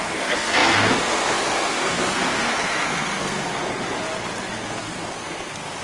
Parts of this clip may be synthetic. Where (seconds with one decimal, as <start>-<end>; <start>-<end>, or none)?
0.0-3.8; 4.5-5.8